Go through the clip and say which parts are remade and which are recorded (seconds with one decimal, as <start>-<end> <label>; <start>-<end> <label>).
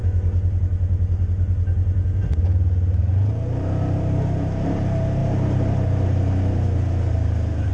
0.0-7.7 recorded